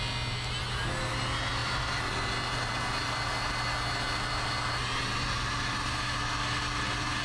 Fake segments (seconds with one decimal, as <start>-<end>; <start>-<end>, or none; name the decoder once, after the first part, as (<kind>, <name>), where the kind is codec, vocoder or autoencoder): none

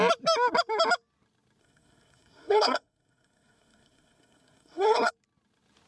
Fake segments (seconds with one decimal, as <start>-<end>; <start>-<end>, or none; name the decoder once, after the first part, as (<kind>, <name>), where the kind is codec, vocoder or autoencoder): 1.6-5.1 (codec, SNAC)

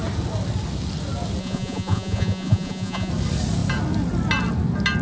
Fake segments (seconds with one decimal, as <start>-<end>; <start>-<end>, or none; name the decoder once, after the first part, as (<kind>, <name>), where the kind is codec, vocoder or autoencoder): 1.4-3.1 (vocoder, Vocos)

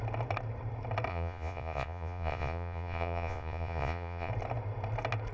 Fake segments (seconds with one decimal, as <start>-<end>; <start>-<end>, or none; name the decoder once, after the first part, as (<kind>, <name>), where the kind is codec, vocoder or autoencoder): 1.1-4.3 (vocoder, Vocos)

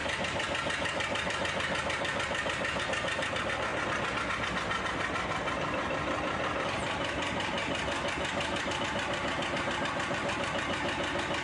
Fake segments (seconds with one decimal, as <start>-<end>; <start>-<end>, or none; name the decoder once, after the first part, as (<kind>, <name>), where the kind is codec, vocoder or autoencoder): 0.0-2.8 (vocoder, BigVGAN v2); 3.7-8.8

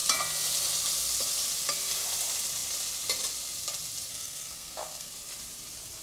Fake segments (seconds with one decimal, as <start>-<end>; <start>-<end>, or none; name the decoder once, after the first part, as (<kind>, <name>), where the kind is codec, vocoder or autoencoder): 4.1-5.1 (codec, SNAC)